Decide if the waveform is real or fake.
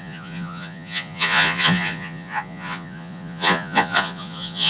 fake